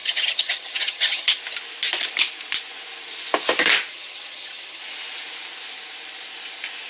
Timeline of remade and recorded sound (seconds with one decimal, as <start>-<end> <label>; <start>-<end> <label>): 0.0-1.4 remade; 1.4-3.9 recorded; 3.9-4.8 remade; 4.8-6.9 recorded

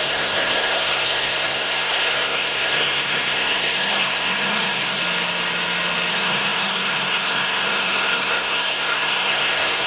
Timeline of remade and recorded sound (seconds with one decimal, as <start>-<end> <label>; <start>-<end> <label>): 0.0-5.0 remade; 5.0-6.1 recorded; 6.1-9.9 remade

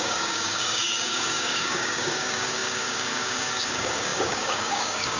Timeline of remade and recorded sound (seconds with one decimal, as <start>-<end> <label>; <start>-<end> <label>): 0.0-5.2 remade

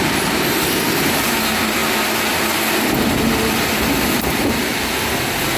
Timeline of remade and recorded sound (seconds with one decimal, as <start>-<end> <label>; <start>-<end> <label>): 0.0-1.8 remade; 1.8-4.1 recorded; 4.1-4.7 remade; 4.7-5.6 recorded

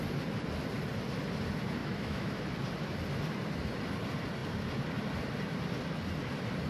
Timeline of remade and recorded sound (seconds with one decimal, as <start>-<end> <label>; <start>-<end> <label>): 0.0-1.8 recorded; 1.8-2.4 remade; 2.4-6.7 recorded

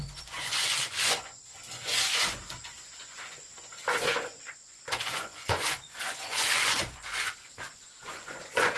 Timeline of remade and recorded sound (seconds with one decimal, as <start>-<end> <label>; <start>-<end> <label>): 0.0-8.8 remade

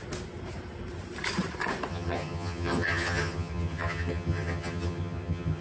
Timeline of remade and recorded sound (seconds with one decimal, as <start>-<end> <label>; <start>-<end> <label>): 0.0-1.9 recorded; 1.9-5.6 remade